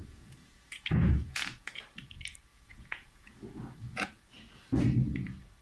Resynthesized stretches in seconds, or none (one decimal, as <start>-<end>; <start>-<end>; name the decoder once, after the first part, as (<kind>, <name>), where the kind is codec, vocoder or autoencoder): 0.0-1.8 (vocoder, Vocos); 2.5-4.2